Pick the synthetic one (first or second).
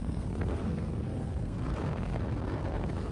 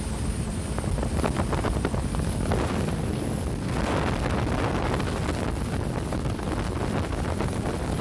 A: first